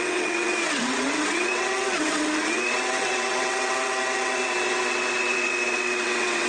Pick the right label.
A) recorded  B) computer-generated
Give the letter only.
B